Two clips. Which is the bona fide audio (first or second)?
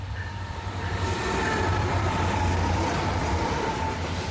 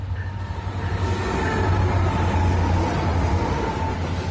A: second